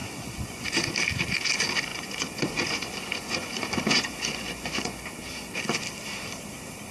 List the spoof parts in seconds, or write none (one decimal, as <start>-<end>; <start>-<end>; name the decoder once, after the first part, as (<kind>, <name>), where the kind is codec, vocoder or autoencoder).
0.0-0.9 (vocoder, Vocos); 1.9-5.0